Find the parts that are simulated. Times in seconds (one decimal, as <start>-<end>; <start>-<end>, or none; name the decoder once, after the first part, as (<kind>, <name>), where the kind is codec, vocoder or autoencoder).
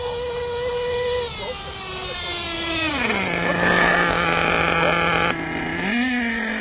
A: none